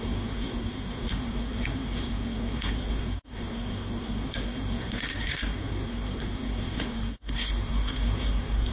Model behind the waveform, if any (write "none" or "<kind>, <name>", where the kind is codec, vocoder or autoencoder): codec, SNAC